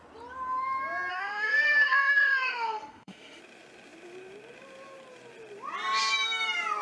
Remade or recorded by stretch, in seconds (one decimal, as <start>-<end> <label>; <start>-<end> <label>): 0.0-1.1 recorded; 1.1-3.4 remade; 3.4-6.8 recorded